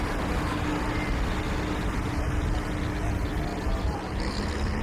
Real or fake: real